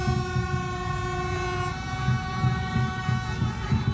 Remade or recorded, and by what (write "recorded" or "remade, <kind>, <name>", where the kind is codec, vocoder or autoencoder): recorded